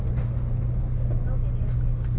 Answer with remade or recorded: recorded